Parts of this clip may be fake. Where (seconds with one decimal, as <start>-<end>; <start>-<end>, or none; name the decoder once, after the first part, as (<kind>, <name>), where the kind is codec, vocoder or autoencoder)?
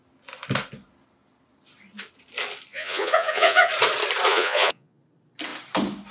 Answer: 2.7-3.7 (vocoder, Vocos); 4.3-5.0